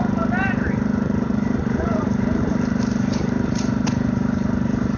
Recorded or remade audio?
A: remade